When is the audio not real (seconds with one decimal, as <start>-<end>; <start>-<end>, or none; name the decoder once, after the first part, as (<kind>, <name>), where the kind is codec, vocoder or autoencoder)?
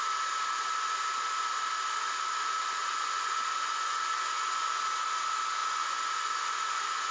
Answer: 2.8-4.8 (vocoder, Vocos); 5.6-7.1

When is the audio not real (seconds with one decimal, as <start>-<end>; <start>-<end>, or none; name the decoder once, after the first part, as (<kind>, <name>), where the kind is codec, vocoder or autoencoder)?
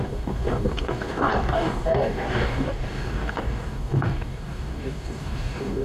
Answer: 0.0-5.8 (codec, DAC)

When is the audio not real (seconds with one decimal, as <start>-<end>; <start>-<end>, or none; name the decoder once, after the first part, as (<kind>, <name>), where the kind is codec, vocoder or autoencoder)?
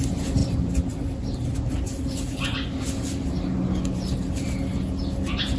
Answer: none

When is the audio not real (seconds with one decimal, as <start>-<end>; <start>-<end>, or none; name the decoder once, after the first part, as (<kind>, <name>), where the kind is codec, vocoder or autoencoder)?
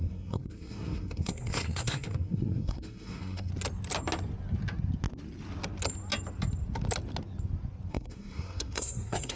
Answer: 0.0-3.5 (codec, SNAC); 7.9-9.4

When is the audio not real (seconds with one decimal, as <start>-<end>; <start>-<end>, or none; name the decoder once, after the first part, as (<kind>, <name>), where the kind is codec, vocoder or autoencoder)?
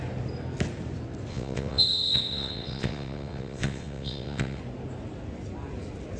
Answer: 1.3-4.6 (vocoder, WaveNeXt)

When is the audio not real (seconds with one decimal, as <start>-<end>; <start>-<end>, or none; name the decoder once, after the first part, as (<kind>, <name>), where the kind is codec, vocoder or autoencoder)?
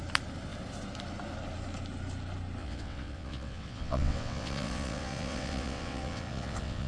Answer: 2.6-6.9 (vocoder, WaveNeXt)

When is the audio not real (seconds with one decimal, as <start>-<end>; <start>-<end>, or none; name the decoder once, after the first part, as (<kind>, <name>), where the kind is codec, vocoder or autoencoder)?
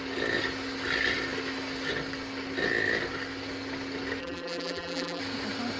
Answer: 4.2-5.2 (vocoder, BigVGAN v2)